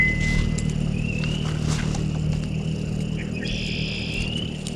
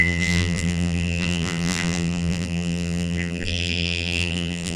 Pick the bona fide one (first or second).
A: first